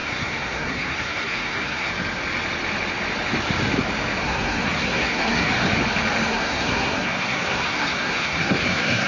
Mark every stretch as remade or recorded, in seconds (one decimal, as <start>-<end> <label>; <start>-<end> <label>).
0.0-1.9 remade; 1.9-4.2 recorded; 4.2-5.5 remade; 5.5-6.3 recorded; 6.3-9.1 remade